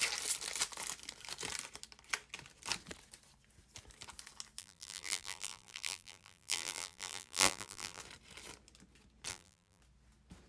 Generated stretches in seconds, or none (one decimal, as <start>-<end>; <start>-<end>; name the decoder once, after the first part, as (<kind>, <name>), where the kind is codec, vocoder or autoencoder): 4.6-8.0 (vocoder, BigVGAN v2); 9.3-9.8